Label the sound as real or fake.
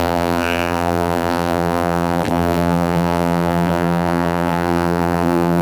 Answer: fake